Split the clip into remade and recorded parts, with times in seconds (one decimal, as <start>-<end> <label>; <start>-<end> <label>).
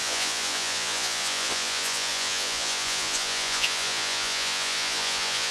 0.0-5.5 remade